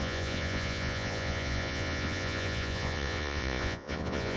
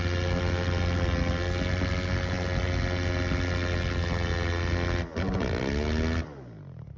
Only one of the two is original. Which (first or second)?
second